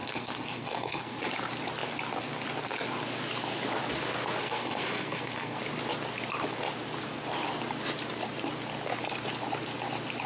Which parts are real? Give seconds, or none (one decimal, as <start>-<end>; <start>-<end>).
1.2-4.4; 5.6-10.3